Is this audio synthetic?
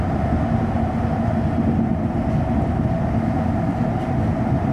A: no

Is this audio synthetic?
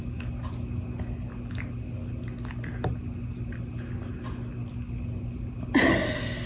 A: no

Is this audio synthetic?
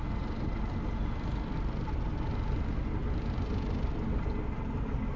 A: no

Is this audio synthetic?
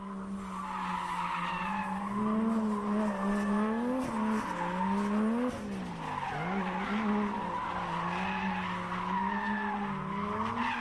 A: no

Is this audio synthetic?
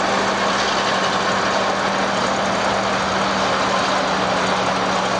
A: no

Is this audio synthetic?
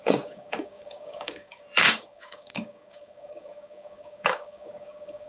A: yes